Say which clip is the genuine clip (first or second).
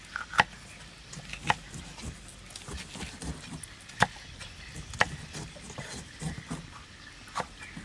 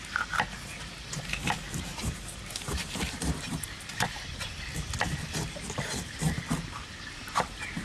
first